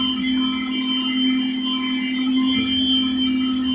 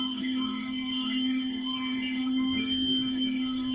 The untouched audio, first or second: first